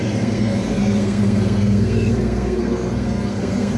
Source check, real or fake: fake